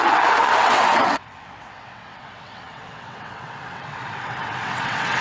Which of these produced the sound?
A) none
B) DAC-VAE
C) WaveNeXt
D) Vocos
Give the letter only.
C